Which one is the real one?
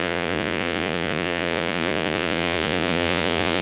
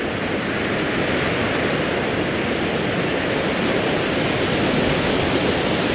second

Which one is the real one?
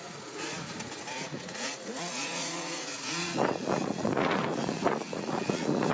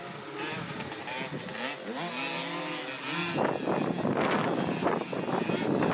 second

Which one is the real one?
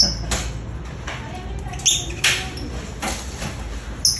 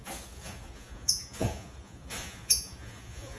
first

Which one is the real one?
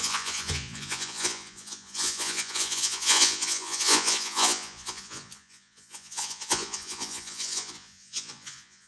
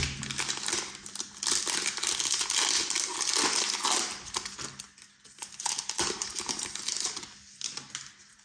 second